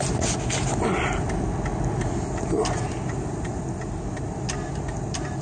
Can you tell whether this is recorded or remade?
recorded